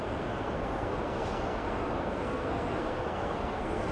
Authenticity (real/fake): fake